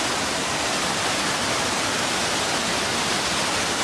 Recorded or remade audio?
recorded